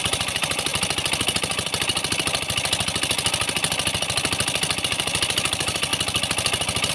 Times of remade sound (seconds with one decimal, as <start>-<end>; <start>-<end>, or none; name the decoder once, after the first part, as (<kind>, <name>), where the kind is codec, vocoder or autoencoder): 0.0-0.7 (vocoder, BigVGAN v2); 4.8-5.9